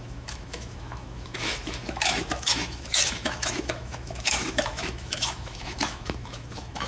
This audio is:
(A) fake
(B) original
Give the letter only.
A